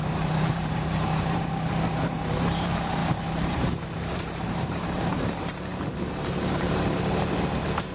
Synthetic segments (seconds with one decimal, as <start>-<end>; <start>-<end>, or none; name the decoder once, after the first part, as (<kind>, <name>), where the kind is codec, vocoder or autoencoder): 0.0-7.9 (vocoder, BigVGAN v2)